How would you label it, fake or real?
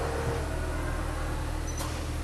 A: real